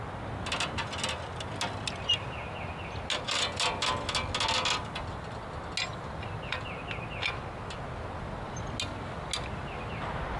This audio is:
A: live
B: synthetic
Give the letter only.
A